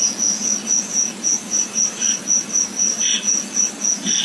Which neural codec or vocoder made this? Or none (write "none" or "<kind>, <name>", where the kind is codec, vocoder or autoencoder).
none